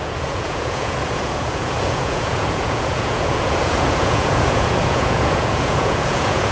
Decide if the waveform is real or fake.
fake